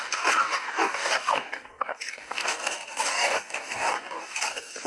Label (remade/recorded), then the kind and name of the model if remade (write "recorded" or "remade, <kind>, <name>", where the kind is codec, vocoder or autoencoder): remade, codec, DAC